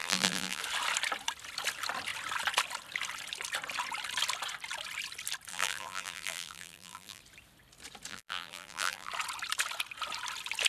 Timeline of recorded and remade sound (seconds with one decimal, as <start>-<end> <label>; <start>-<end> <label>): 0.0-0.6 remade; 0.6-5.5 recorded; 5.5-7.2 remade; 7.2-8.1 recorded; 8.1-9.1 remade; 9.1-10.7 recorded

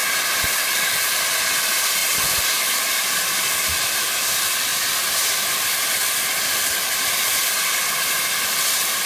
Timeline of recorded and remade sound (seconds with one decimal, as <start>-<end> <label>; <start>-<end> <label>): 0.0-0.9 recorded; 0.9-2.0 remade; 2.0-2.5 recorded; 2.5-4.7 remade; 4.7-5.3 recorded; 5.3-7.4 remade; 7.4-9.1 recorded

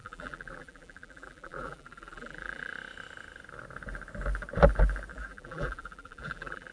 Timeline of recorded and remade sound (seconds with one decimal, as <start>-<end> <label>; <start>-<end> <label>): 0.0-2.7 remade; 2.7-5.1 recorded; 5.1-6.7 remade

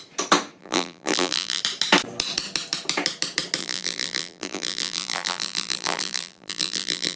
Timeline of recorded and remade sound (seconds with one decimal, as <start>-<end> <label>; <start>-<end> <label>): 0.0-0.6 recorded; 0.6-1.6 remade; 1.6-3.6 recorded; 3.6-7.2 remade